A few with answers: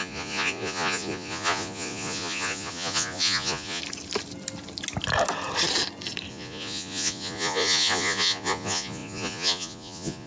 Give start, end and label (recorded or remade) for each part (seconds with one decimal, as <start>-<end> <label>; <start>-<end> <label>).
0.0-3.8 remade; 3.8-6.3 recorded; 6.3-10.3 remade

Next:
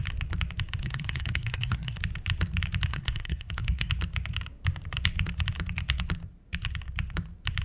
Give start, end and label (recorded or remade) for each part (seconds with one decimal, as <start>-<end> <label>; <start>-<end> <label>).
0.0-0.8 recorded; 0.8-2.0 remade; 2.0-2.9 recorded; 2.9-3.9 remade; 3.9-7.6 recorded

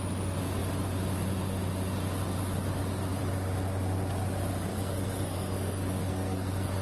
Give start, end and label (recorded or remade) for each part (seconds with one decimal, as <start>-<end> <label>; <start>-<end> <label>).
0.0-4.7 recorded; 4.7-6.8 remade

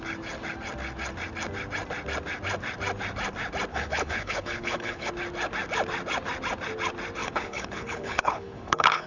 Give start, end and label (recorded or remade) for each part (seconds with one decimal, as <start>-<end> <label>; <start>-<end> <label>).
0.0-3.7 recorded; 3.7-5.1 remade; 5.1-7.2 recorded; 7.2-9.1 remade

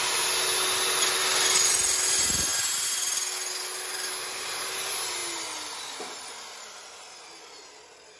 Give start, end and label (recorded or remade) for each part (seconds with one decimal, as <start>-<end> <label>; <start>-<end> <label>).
0.0-8.2 recorded

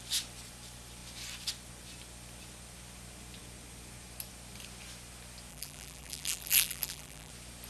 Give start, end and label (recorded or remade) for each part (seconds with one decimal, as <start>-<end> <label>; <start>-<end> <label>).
0.0-5.5 recorded; 5.5-7.3 remade; 7.3-7.7 recorded